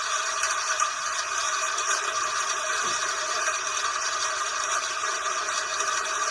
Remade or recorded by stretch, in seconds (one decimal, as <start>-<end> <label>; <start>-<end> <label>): 0.0-1.4 recorded; 1.4-5.2 remade; 5.2-6.3 recorded